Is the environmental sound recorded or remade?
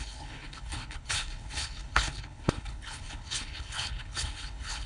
remade